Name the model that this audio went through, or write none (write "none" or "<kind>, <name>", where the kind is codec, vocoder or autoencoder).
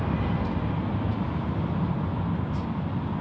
none